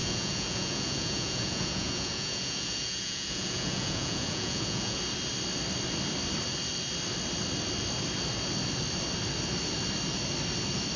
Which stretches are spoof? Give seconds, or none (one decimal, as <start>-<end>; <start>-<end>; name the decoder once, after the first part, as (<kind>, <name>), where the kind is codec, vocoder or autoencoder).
0.0-5.0 (vocoder, Vocos)